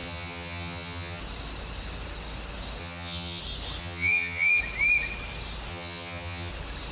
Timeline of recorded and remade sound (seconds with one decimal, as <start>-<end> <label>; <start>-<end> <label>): 0.0-1.2 remade; 1.2-2.8 recorded; 2.8-3.4 remade; 3.4-3.8 recorded; 3.8-4.6 remade; 4.6-5.7 recorded; 5.7-6.5 remade; 6.5-6.9 recorded

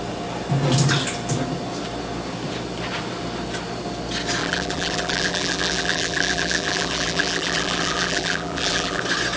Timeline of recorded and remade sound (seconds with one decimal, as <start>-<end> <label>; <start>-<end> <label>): 0.0-4.4 recorded; 4.4-9.0 remade; 9.0-9.4 recorded

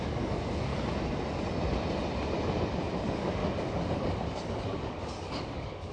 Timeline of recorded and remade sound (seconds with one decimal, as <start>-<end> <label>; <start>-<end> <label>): 0.0-0.7 remade; 0.7-3.0 recorded; 3.0-3.4 remade; 3.4-3.9 recorded; 3.9-5.9 remade

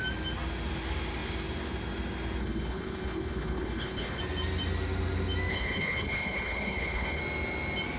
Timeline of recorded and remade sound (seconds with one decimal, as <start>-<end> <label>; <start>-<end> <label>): 0.0-2.4 recorded; 2.4-4.2 remade; 4.2-5.5 recorded; 5.5-7.2 remade; 7.2-8.0 recorded

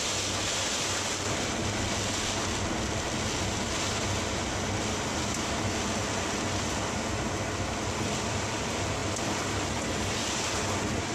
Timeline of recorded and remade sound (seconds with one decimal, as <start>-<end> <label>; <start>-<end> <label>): 0.0-11.1 recorded

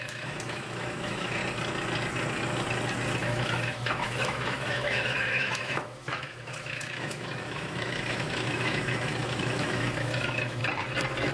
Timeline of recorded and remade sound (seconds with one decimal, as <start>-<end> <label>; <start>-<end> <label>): 0.0-1.4 remade; 1.4-3.2 recorded; 3.2-10.6 remade; 10.6-11.3 recorded